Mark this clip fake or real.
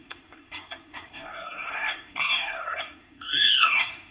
fake